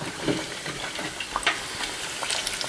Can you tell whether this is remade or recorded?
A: recorded